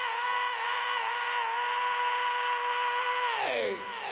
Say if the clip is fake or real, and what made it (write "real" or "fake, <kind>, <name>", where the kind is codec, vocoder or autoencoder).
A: real